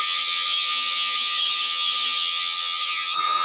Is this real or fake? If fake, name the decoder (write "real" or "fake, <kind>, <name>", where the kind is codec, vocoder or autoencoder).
fake, vocoder, HiFi-GAN